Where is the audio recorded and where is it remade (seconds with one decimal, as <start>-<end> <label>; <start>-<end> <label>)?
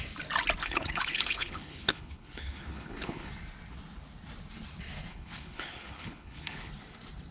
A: 0.0-0.6 recorded; 0.6-3.3 remade; 3.3-5.1 recorded; 5.1-6.7 remade; 6.7-7.3 recorded